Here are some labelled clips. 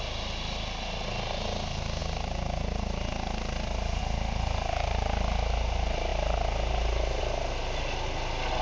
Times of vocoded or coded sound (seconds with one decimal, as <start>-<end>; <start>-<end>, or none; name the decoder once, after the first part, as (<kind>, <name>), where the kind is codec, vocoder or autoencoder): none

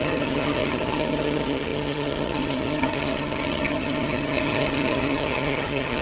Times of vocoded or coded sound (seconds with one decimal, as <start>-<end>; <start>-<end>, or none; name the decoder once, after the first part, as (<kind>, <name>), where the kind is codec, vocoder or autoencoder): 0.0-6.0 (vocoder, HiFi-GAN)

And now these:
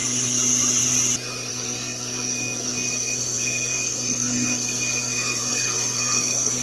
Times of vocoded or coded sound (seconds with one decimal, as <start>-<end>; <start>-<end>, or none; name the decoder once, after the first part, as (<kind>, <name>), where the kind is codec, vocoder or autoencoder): 1.5-6.6 (codec, SNAC)

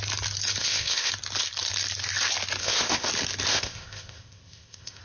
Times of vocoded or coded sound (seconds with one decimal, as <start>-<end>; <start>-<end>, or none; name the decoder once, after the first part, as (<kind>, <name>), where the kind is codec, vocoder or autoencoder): 0.6-1.1 (codec, ZipCodec); 2.6-3.1; 3.5-5.0

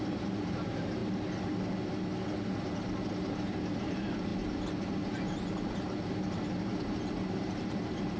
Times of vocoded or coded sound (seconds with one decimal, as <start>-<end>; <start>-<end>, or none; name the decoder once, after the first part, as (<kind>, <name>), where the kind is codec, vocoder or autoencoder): 0.0-1.0 (vocoder, BigVGAN v2); 3.1-4.3; 4.9-8.2

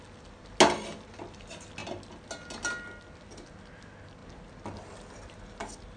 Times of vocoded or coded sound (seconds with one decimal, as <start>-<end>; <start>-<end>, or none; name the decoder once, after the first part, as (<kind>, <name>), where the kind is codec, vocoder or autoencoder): none